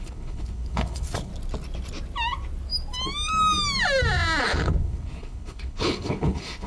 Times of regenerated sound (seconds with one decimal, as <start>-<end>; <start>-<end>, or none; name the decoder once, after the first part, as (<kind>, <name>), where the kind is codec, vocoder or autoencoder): 0.0-1.3 (codec, HILCodec); 4.4-6.7

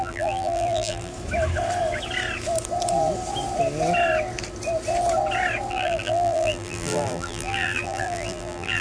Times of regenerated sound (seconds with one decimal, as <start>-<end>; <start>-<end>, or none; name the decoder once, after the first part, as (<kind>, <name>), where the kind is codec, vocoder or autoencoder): 0.0-1.1 (vocoder, BigVGAN v2); 5.7-8.8

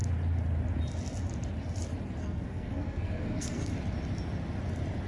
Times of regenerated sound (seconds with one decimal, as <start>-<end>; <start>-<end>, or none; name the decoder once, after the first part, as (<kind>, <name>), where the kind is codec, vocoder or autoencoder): 2.2-3.7 (codec, SNAC)